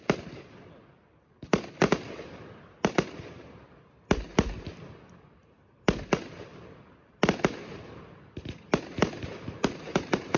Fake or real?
fake